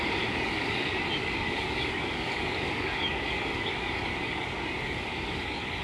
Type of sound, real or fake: fake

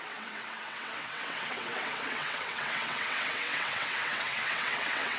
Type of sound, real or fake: fake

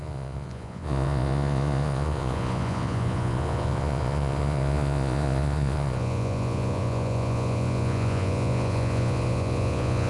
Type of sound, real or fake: fake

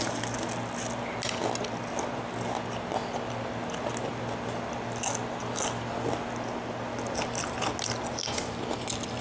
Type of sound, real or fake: real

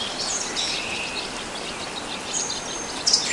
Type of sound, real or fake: real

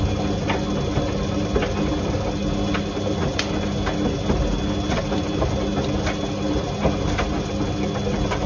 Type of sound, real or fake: real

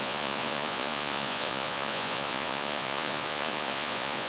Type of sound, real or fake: fake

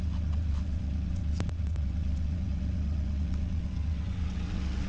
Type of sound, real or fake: fake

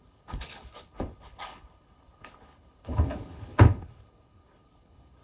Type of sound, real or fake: fake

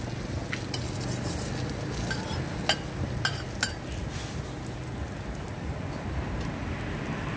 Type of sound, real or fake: real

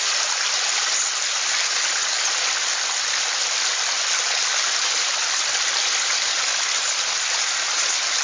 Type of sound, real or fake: real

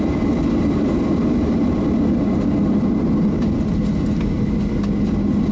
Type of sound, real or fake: real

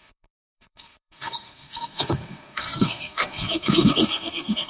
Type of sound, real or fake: fake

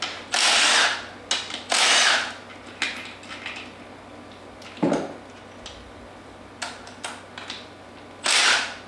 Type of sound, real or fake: real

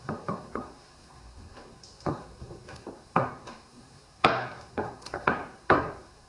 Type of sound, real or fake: fake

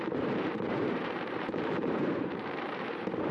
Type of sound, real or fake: fake